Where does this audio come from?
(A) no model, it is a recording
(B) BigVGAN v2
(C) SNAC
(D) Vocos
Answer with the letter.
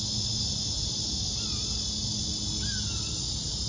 A